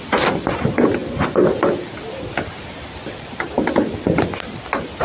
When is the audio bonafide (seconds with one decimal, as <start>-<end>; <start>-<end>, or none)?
0.0-5.0